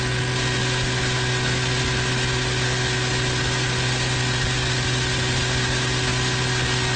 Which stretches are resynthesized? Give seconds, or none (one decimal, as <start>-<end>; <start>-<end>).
none